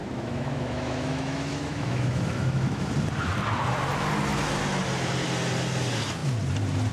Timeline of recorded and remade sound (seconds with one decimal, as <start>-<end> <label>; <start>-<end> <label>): 0.0-2.9 remade; 2.9-6.9 recorded